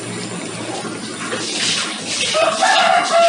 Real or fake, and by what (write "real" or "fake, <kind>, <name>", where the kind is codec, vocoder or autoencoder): real